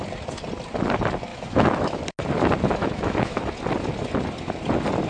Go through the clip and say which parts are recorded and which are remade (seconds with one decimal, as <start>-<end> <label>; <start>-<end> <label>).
0.0-1.3 recorded; 1.3-2.0 remade; 2.0-2.8 recorded; 2.8-3.4 remade; 3.4-5.1 recorded